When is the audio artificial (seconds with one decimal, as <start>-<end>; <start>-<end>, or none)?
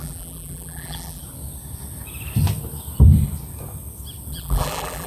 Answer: 0.0-1.2; 4.3-5.1